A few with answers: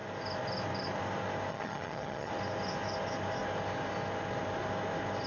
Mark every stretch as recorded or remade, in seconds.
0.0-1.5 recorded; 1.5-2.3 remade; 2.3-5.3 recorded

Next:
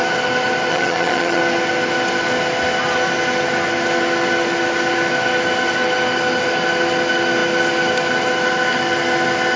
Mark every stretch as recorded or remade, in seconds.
0.0-0.7 recorded; 0.7-1.4 remade; 1.4-9.6 recorded

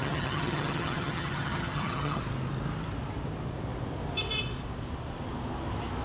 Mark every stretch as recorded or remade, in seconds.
0.0-2.2 remade; 2.2-6.0 recorded